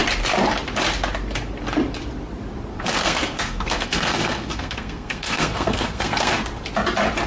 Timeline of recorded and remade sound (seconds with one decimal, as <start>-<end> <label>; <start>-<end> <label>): 0.0-2.7 recorded; 2.7-6.3 remade; 6.3-7.3 recorded